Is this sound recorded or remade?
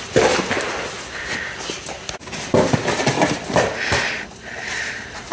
recorded